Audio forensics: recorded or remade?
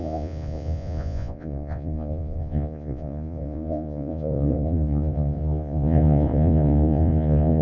remade